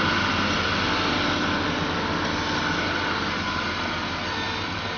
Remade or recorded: recorded